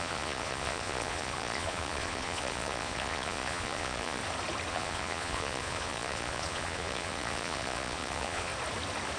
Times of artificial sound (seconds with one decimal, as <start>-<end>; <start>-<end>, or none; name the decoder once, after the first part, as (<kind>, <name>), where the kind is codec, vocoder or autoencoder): 0.0-4.2 (vocoder, Vocos); 4.7-8.5